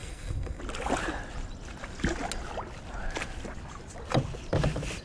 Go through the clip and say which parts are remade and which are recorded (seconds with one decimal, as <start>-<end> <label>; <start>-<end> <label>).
0.0-0.6 remade; 0.6-5.0 recorded